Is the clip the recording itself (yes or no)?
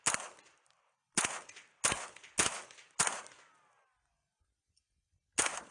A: yes